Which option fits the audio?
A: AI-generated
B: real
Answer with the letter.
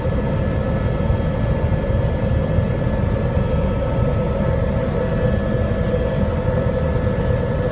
B